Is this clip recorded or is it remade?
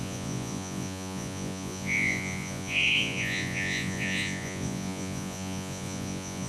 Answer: remade